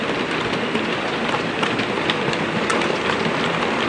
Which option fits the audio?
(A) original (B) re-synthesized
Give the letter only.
B